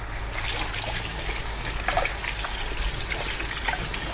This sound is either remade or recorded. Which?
recorded